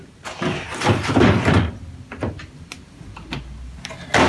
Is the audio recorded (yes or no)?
yes